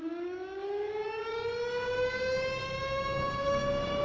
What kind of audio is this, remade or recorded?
remade